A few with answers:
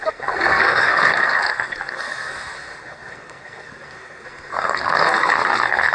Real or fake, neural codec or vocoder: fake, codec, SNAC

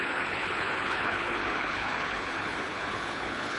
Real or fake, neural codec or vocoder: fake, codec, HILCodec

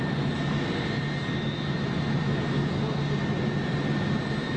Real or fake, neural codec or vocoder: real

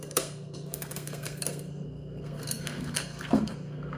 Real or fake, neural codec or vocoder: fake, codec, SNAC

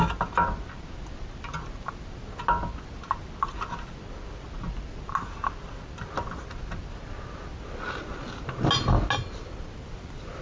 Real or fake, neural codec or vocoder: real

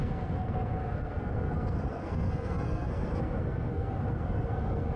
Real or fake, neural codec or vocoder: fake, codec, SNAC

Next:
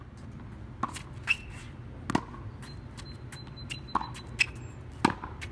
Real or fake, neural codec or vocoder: real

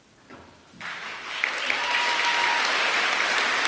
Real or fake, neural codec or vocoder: real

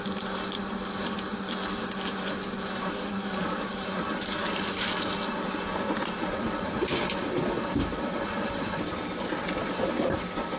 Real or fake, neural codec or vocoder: fake, vocoder, BigVGAN v2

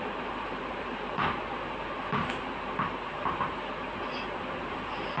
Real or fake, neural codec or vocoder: real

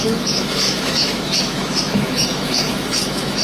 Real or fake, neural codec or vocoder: fake, autoencoder, DAC-VAE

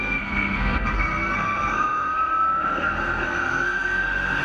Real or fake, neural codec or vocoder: fake, codec, SNAC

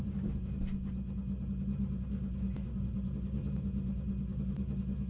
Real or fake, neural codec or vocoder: real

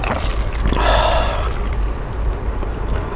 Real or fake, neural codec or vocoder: real